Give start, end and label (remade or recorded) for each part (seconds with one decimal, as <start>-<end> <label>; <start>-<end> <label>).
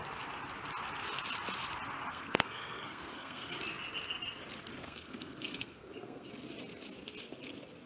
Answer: 0.0-2.1 recorded; 2.1-3.5 remade; 3.5-4.8 recorded; 4.8-6.3 remade; 6.3-7.9 recorded